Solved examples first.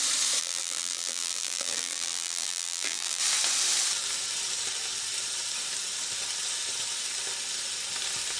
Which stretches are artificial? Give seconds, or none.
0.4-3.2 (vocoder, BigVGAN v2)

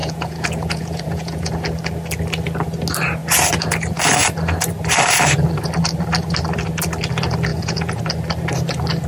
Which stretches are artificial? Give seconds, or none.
0.0-1.5 (vocoder, Vocos); 7.5-8.0

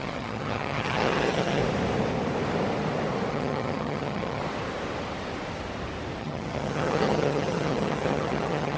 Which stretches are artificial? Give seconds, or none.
0.0-1.6 (vocoder, HiFi-GAN); 3.3-4.4; 6.2-8.8

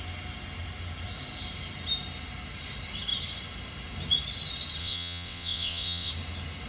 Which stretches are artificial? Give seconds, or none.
4.8-6.1 (vocoder, WaveNeXt)

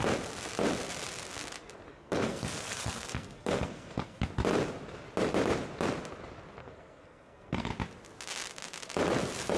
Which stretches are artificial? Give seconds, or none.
1.9-4.3 (codec, SNAC); 6.6-7.7

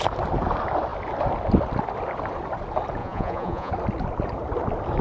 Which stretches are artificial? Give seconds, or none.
3.0-3.7 (vocoder, Vocos)